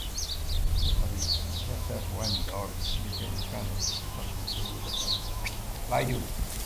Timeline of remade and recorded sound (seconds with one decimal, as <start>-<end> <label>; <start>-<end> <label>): 0.0-1.1 recorded; 1.1-1.9 remade; 1.9-2.4 recorded; 2.4-3.0 remade; 3.0-3.8 recorded; 3.8-5.6 remade; 5.6-6.7 recorded